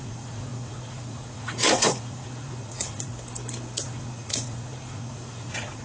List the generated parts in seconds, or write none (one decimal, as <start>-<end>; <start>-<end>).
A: 0.0-3.1; 3.8-5.8